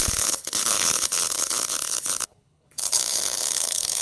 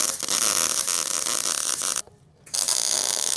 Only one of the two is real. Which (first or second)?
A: second